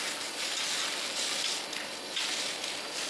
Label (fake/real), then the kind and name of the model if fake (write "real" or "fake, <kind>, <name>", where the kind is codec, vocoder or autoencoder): real